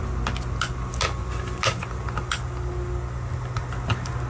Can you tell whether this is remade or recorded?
recorded